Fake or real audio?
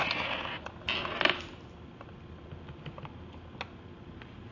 real